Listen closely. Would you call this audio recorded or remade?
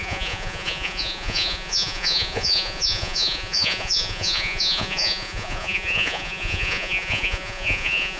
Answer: remade